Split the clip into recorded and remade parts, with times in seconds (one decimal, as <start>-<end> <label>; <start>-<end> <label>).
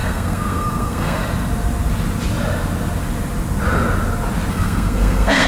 0.0-1.2 remade; 1.2-4.5 recorded; 4.5-5.5 remade